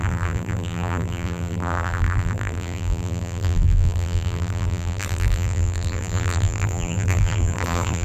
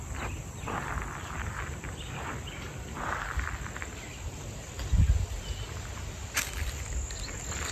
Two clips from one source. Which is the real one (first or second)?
second